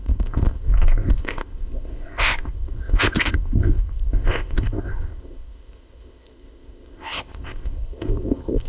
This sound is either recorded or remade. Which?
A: remade